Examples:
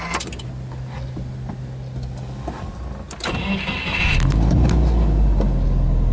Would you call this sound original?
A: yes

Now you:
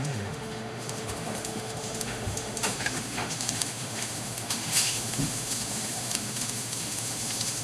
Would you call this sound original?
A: no